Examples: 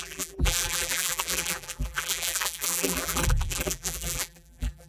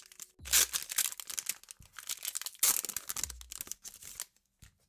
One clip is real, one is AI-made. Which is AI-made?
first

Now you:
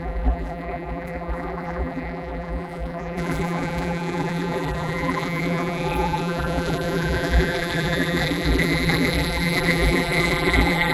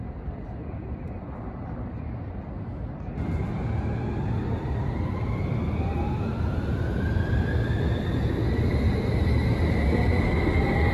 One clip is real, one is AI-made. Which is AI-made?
first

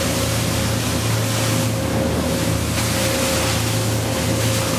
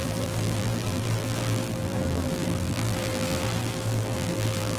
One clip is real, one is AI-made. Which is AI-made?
second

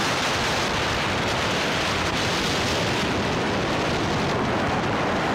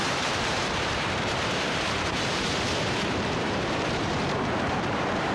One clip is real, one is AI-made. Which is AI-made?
second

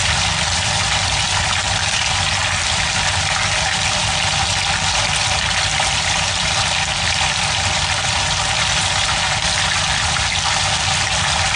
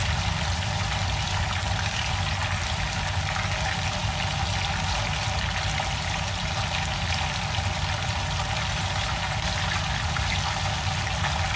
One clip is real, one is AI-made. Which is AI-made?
first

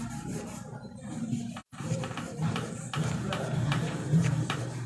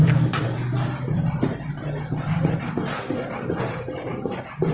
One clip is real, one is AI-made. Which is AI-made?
first